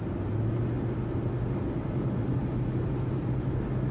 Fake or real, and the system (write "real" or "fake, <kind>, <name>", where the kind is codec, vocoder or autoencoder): real